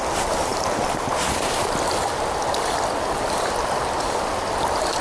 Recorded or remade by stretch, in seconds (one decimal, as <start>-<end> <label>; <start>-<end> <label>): 0.0-5.0 recorded